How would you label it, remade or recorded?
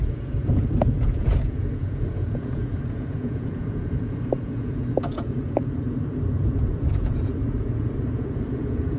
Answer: remade